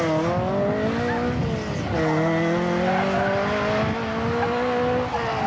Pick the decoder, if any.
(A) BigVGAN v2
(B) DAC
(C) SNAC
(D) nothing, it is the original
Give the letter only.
D